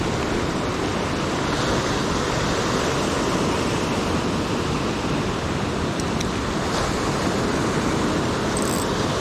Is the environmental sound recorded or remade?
recorded